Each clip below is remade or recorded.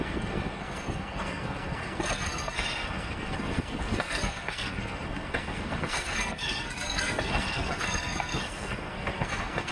remade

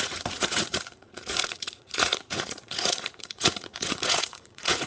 remade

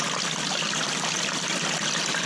recorded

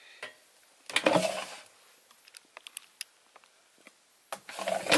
recorded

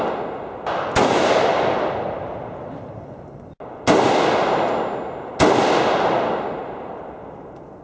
recorded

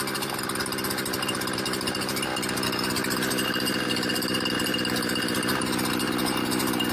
recorded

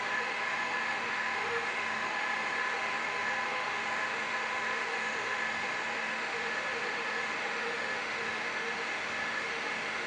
remade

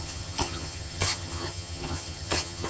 remade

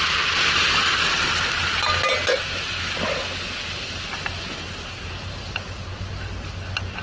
recorded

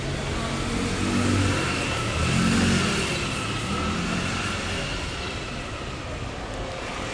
recorded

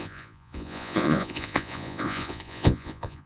remade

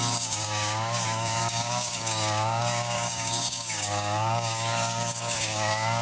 remade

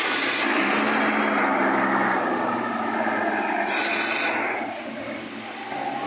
recorded